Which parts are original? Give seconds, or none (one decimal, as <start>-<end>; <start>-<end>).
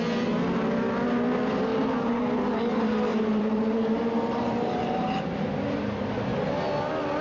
0.0-1.7; 2.2-3.1; 5.3-7.2